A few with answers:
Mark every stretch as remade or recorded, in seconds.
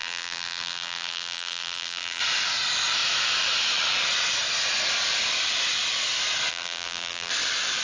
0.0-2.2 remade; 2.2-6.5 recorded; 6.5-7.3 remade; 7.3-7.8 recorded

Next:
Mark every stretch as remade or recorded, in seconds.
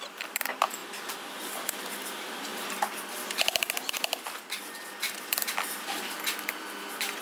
0.0-0.8 remade; 0.8-1.8 recorded; 1.8-7.2 remade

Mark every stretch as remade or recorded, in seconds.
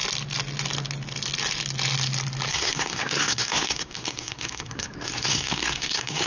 0.0-2.5 recorded; 2.5-6.3 remade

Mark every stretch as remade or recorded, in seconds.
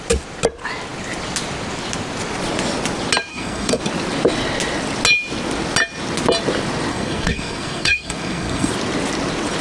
0.0-3.3 recorded; 3.3-3.8 remade; 3.8-6.9 recorded; 6.9-8.7 remade; 8.7-9.6 recorded